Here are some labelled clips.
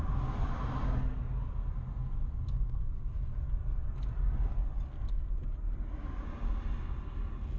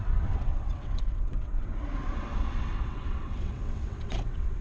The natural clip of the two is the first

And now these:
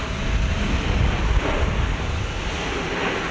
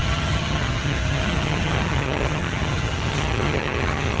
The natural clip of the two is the first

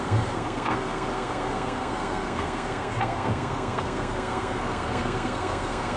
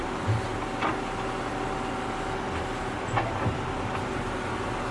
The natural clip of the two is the second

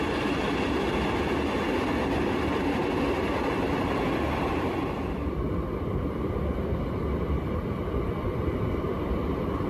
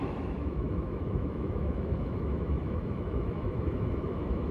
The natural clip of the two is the first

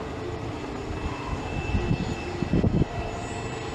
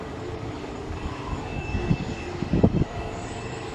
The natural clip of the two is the first